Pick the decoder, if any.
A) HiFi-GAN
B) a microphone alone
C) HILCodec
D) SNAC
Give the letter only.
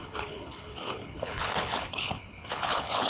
C